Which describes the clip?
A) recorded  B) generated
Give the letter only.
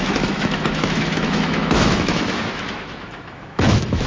B